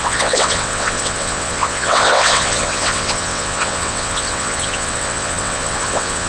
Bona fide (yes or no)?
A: no